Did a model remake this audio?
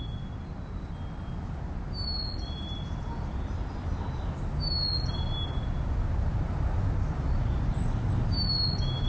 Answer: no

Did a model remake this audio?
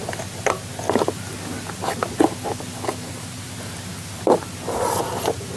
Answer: no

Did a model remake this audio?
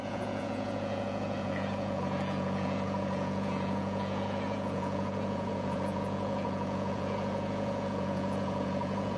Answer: yes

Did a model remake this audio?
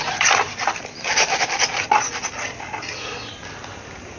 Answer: no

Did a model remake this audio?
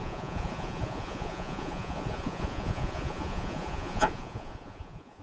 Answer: yes